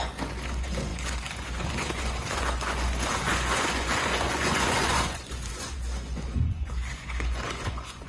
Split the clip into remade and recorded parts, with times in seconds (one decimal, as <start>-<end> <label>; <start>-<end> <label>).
0.0-8.1 remade